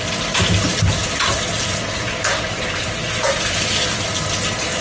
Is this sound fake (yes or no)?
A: no